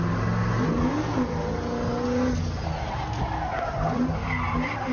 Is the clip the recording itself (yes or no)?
yes